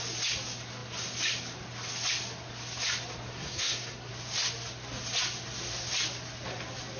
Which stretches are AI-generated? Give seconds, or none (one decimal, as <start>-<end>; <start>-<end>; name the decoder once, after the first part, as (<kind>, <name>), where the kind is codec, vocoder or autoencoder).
3.3-4.1 (codec, SNAC)